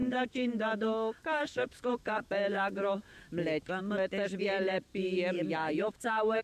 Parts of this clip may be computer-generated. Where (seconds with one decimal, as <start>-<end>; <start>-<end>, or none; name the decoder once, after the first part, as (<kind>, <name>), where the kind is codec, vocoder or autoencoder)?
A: 0.0-3.8 (autoencoder, DAC-VAE); 4.9-6.4